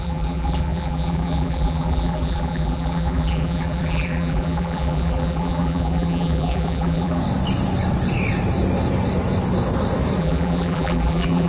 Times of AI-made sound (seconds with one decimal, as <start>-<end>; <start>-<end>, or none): 0.0-7.2; 10.2-11.5